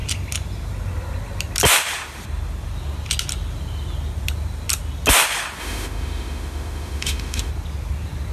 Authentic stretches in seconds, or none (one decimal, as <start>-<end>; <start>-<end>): 0.0-5.6; 7.5-8.3